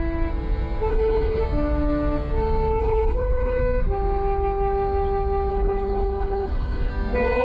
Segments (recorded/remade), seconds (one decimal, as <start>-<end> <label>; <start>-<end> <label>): 0.0-0.9 recorded; 0.9-1.4 remade; 1.4-2.8 recorded; 2.8-3.6 remade; 3.6-5.5 recorded; 5.5-6.9 remade; 6.9-7.4 recorded